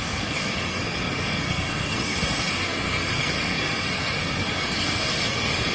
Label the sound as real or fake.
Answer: fake